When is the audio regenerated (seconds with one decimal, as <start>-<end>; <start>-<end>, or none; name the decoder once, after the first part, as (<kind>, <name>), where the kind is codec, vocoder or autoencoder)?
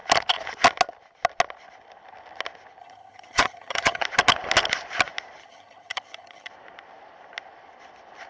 2.8-4.0 (vocoder, HiFi-GAN); 5.4-6.5